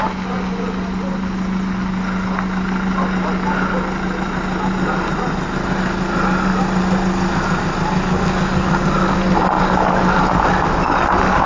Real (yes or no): yes